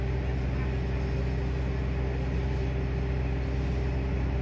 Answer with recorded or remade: recorded